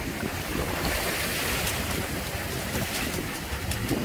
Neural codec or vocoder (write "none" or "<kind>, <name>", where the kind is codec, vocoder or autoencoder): none